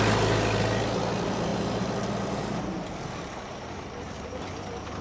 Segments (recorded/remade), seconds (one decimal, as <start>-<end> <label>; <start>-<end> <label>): 0.0-1.5 recorded; 1.5-4.5 remade; 4.5-5.0 recorded